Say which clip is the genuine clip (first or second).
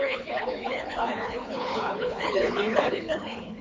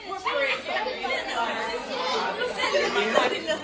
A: second